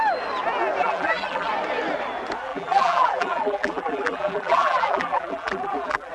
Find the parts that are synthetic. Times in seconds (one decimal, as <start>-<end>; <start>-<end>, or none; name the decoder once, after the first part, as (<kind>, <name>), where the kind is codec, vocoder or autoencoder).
0.8-1.5 (vocoder, BigVGAN v2); 2.5-6.1